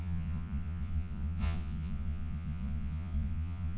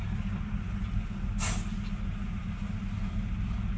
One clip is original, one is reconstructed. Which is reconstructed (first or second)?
first